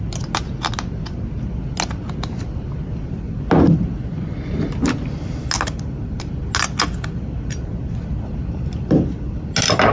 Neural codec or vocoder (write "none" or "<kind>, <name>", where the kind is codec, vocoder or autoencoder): none